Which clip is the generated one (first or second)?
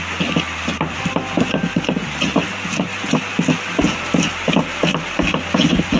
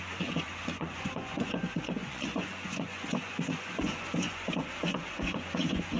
second